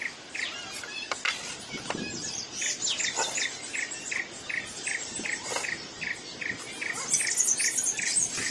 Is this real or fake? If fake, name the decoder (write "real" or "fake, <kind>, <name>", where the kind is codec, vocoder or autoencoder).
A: real